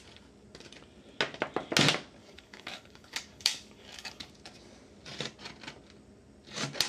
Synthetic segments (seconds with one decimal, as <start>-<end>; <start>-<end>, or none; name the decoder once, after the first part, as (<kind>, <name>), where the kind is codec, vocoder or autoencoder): 2.2-4.3 (codec, DAC)